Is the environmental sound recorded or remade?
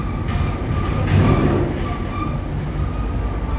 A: recorded